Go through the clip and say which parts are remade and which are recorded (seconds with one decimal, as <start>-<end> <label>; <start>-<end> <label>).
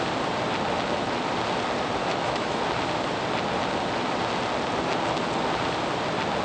0.0-2.0 recorded; 2.0-2.6 remade; 2.6-6.4 recorded